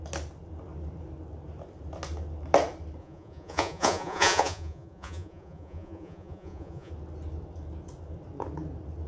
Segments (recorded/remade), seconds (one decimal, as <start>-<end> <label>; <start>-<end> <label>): 0.0-3.0 recorded; 3.0-6.9 remade; 6.9-9.1 recorded